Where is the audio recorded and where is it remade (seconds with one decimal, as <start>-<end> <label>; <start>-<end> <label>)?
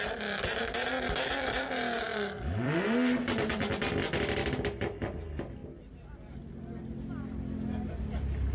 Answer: 0.0-2.1 recorded; 2.1-2.8 remade; 2.8-8.5 recorded